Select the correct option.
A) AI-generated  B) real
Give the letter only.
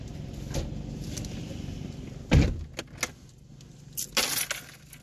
B